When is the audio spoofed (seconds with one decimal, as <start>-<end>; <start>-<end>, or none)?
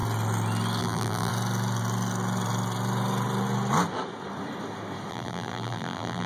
0.8-1.3; 5.1-6.3